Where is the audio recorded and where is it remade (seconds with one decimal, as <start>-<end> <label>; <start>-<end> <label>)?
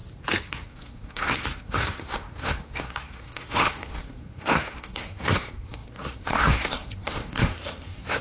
0.0-0.5 recorded; 0.5-8.2 remade